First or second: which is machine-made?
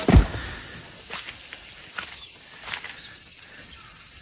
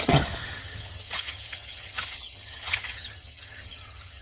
second